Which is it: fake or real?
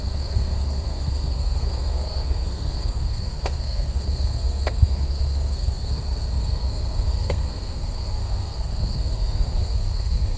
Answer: fake